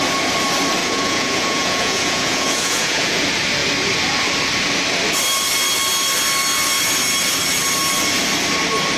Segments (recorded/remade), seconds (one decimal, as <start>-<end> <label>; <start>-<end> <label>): 0.0-0.8 recorded; 0.8-3.2 remade; 3.2-9.0 recorded